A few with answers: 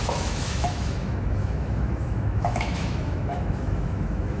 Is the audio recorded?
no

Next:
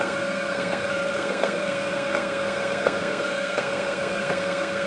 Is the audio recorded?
no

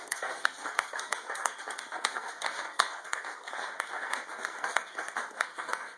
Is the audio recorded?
no